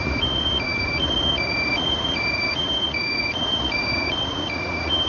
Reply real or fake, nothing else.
fake